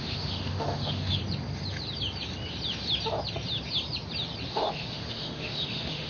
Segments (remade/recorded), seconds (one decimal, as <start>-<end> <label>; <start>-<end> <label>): 0.0-1.2 remade; 1.2-4.5 recorded; 4.5-6.1 remade